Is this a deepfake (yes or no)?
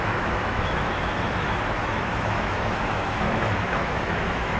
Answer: yes